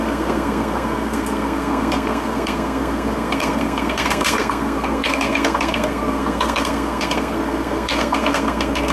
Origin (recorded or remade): remade